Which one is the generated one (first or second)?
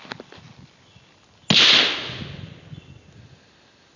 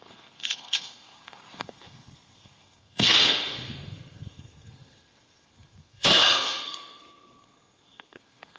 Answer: second